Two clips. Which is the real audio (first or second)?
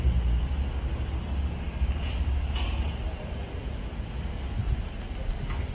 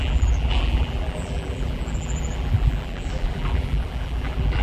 first